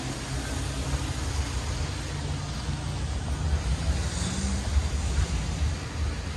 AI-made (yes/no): no